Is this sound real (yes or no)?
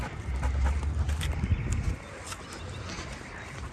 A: yes